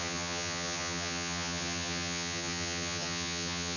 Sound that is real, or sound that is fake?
fake